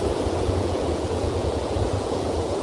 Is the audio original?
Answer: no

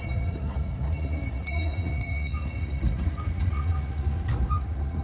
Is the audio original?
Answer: no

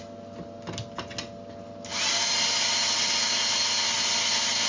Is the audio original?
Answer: yes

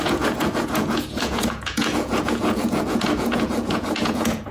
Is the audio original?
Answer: no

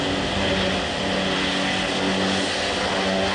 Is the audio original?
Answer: yes